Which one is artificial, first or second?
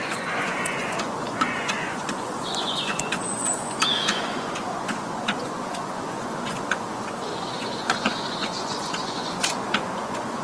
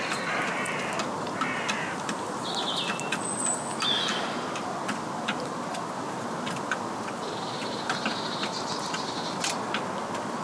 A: first